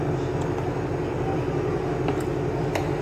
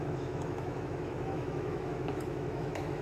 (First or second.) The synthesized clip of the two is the second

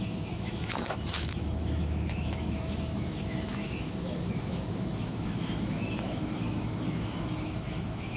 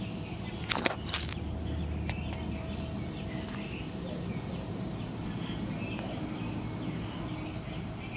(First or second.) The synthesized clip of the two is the first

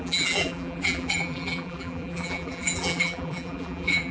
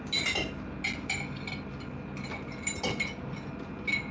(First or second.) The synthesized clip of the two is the first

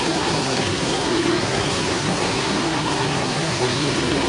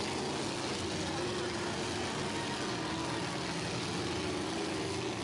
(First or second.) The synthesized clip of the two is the first